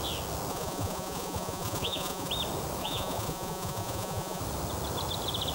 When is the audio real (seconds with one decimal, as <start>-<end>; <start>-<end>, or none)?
0.0-0.5; 2.3-2.8; 4.4-5.5